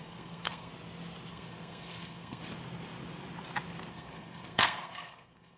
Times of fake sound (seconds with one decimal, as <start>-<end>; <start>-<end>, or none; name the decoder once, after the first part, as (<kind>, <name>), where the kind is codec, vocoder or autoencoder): 0.0-0.7 (codec, SNAC); 1.3-2.4; 3.9-5.6